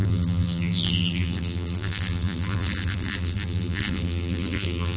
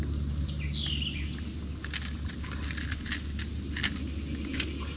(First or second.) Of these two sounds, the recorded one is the second